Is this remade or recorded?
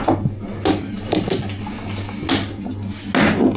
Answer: recorded